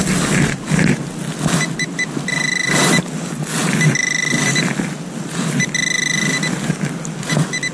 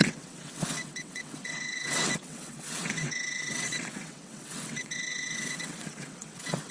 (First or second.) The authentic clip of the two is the first